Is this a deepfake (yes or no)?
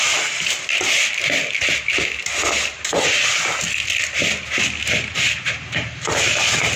no